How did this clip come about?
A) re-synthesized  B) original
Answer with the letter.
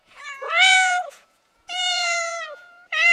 A